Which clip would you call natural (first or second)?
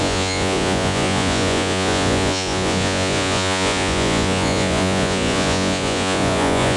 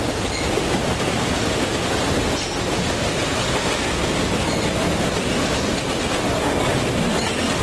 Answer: second